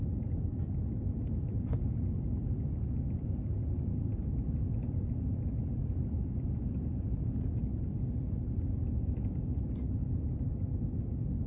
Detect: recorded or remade recorded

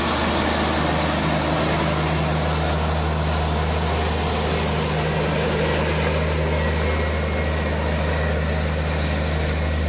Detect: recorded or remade recorded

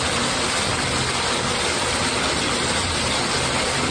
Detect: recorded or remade recorded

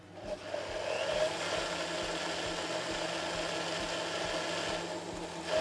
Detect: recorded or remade recorded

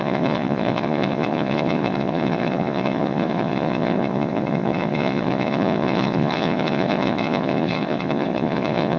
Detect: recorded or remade remade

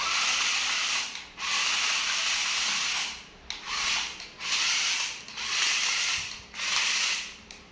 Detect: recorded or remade recorded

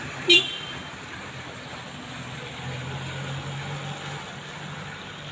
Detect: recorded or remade recorded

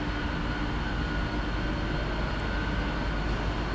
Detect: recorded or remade recorded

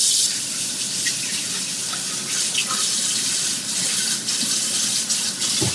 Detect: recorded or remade recorded